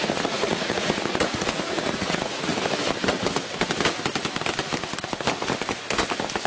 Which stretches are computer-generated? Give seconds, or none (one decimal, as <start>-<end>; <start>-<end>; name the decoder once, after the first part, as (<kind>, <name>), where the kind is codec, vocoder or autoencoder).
0.0-2.5 (vocoder, Vocos)